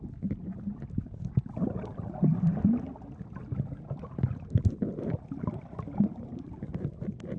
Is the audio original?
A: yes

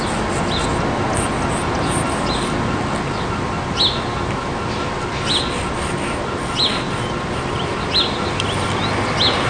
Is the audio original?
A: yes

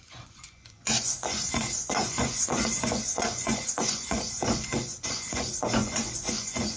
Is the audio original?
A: no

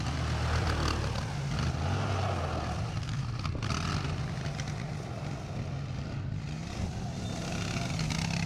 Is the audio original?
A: yes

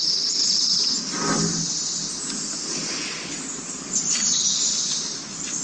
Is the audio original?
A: yes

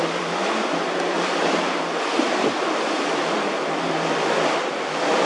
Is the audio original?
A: no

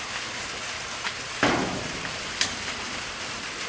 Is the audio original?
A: yes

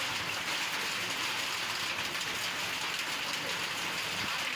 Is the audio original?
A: yes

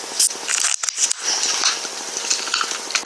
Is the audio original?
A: yes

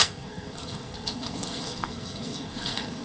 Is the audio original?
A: no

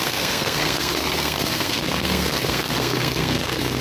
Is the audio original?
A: no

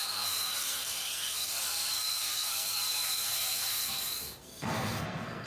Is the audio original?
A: no